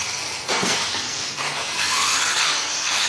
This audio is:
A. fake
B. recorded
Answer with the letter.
A